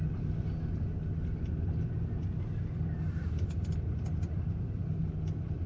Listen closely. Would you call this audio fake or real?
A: real